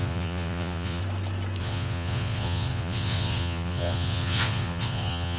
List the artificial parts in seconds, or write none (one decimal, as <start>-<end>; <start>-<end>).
0.0-1.0; 1.6-5.4